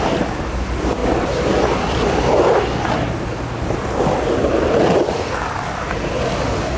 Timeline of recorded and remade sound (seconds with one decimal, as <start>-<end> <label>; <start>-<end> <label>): 0.0-6.8 recorded